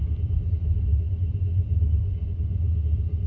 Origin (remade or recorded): recorded